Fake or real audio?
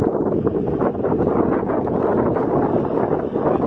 real